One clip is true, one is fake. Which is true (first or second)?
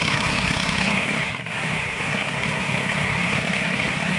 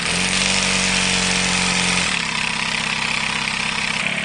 second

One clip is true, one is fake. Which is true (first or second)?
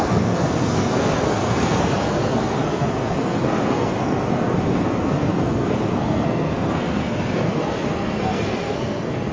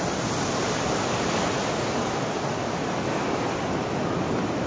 second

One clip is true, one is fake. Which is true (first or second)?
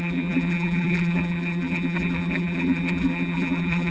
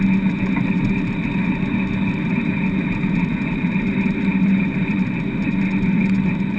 second